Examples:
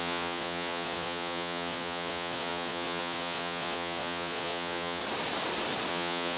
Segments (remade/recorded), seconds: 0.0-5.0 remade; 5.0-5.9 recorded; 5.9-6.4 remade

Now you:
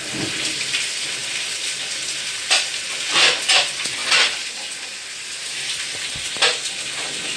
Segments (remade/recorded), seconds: 0.0-7.4 recorded

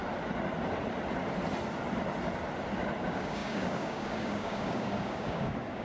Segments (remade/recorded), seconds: 0.0-3.0 recorded; 3.0-5.8 remade

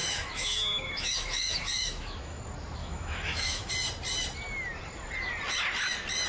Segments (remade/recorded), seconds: 0.0-2.4 remade; 2.4-2.8 recorded; 2.8-3.7 remade; 3.7-6.3 recorded

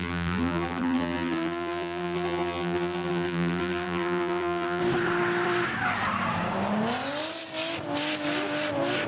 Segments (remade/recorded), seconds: 0.0-4.8 remade; 4.8-9.1 recorded

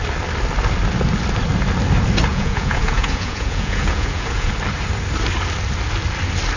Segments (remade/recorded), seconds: 0.0-2.3 recorded; 2.3-4.5 remade; 4.5-6.6 recorded

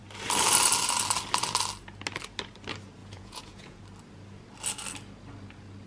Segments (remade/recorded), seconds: 0.0-3.0 recorded; 3.0-3.8 remade; 3.8-5.9 recorded